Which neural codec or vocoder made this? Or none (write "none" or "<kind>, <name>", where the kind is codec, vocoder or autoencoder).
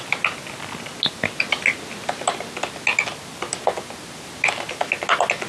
none